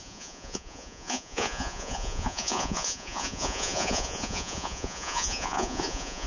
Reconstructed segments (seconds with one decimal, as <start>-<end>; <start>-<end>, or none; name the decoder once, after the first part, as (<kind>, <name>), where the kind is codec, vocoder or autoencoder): 0.0-6.3 (vocoder, Vocos)